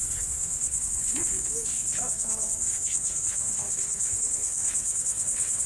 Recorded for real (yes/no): no